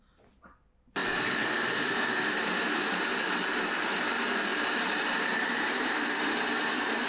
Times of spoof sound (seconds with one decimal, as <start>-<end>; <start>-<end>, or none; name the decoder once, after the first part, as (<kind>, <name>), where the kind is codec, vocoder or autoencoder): 1.0-2.8 (vocoder, BigVGAN v2); 4.5-7.1